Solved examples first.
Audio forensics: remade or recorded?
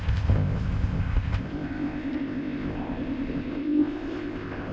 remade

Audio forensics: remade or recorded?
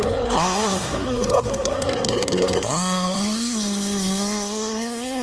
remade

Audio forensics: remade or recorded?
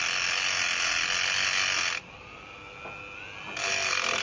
recorded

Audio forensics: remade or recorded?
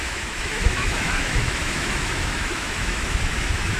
remade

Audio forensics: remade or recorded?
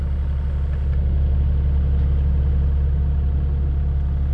recorded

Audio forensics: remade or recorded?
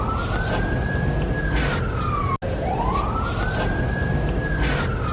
recorded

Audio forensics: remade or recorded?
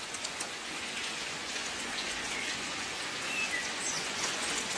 remade